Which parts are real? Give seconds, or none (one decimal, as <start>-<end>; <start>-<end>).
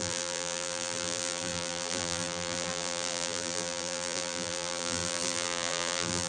none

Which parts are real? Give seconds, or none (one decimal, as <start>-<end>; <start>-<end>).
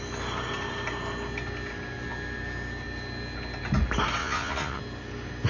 0.0-4.2; 4.8-5.5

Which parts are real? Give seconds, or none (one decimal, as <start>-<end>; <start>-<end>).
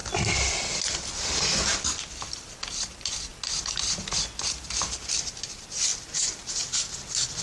0.0-7.4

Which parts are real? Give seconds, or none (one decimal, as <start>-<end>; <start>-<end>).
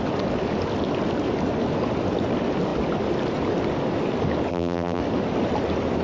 0.0-4.5; 5.0-6.0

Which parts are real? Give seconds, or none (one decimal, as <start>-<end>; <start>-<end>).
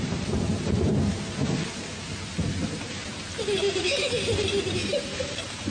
0.0-5.7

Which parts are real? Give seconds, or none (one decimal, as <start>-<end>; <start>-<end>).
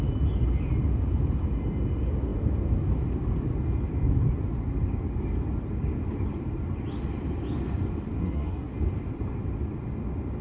0.0-8.2; 8.7-10.4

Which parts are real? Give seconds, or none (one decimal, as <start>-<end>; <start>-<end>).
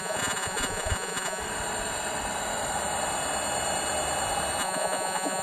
1.4-4.6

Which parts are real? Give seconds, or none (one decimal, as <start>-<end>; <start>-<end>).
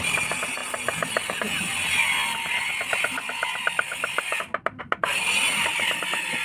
0.0-6.4